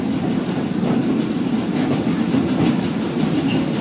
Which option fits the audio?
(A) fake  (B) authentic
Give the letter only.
B